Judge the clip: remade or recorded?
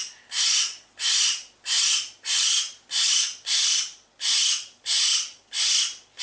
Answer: recorded